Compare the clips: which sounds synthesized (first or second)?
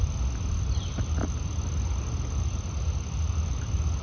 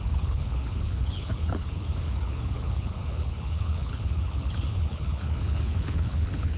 second